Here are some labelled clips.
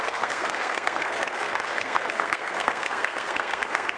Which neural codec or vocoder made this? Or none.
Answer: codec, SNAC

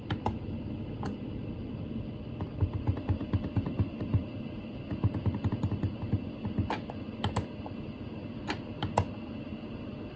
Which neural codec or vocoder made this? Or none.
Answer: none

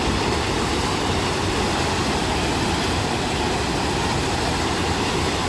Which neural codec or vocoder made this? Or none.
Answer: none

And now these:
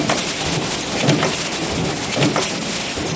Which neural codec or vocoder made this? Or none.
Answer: none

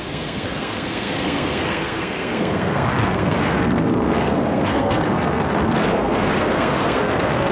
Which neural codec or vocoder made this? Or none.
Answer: codec, SNAC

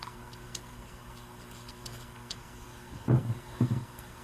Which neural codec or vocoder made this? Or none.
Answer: codec, SNAC